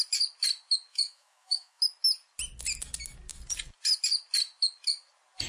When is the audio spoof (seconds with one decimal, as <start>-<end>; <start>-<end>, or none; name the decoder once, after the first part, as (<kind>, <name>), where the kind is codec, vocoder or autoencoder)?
0.9-1.8 (autoencoder, DAC-VAE)

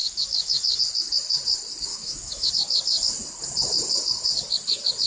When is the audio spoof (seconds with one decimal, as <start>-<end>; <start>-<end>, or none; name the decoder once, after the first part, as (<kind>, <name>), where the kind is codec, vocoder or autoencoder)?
0.0-0.8 (autoencoder, DAC-VAE); 1.9-2.5

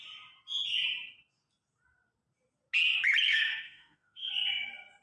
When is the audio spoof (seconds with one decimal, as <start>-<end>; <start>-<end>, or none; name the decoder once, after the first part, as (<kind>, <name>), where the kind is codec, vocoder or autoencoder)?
3.3-4.3 (autoencoder, DAC-VAE)

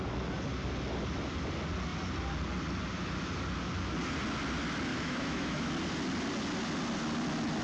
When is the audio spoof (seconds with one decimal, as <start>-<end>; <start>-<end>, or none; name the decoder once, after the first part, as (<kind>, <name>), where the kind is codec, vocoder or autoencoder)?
4.9-5.7 (autoencoder, DAC-VAE)

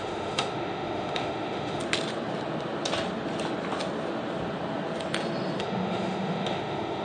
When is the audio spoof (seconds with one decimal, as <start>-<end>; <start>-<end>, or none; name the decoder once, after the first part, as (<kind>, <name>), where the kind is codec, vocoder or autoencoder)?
0.0-1.8 (autoencoder, DAC-VAE); 5.6-7.0